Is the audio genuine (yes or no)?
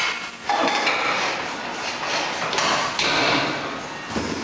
yes